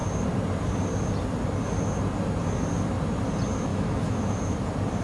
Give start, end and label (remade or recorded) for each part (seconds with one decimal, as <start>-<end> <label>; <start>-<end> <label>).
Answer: 0.0-3.7 recorded; 3.7-4.3 remade; 4.3-5.0 recorded